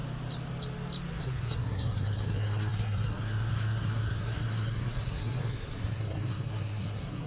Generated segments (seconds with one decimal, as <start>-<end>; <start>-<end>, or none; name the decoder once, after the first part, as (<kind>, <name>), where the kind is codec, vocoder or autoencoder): 1.2-7.3 (codec, SNAC)